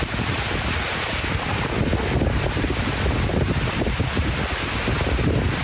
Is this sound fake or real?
real